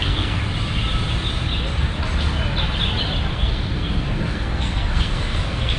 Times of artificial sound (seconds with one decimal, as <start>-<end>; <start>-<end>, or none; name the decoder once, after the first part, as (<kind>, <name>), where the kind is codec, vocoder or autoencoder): 0.0-0.4 (codec, SNAC); 3.3-5.8